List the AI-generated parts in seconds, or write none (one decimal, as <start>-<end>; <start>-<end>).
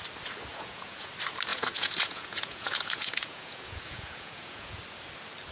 0.5-1.1; 1.5-4.8